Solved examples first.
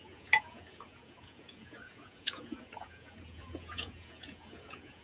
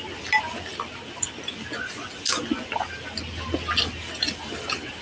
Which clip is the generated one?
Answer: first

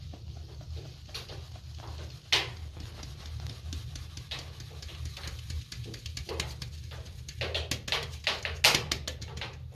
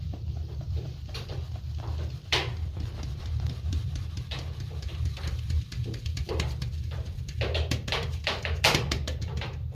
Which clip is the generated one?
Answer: second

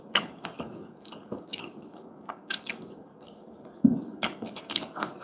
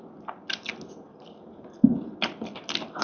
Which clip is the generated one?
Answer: first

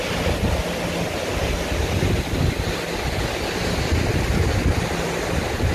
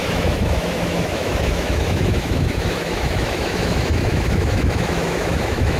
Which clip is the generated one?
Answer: second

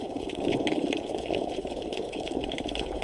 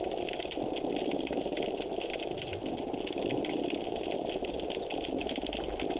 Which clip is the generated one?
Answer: first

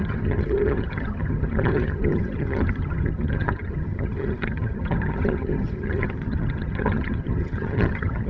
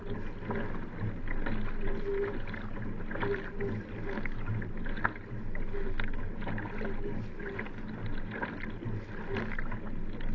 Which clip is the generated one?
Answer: first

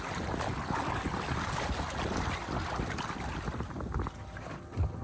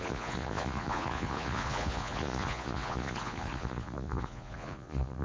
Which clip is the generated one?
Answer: second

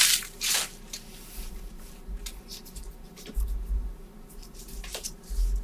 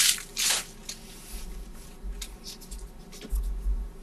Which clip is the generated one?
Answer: first